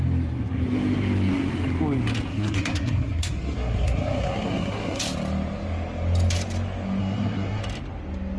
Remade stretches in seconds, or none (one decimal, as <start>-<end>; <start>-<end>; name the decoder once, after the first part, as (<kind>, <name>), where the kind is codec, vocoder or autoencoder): 2.3-5.0 (codec, SNAC); 7.0-7.6